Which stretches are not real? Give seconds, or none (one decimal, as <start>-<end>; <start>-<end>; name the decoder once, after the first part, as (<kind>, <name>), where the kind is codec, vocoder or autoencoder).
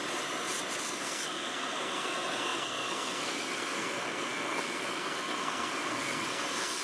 0.8-6.8 (codec, SNAC)